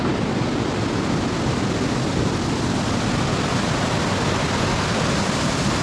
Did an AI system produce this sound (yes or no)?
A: no